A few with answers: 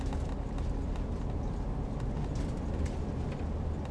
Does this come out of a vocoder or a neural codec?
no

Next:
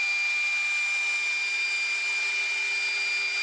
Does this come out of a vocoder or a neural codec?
no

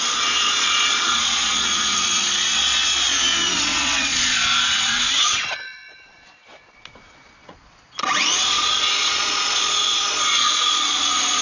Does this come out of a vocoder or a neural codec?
yes